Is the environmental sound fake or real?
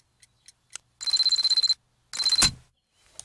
real